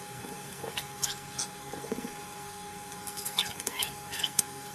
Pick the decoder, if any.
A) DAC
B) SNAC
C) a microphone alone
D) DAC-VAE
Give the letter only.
B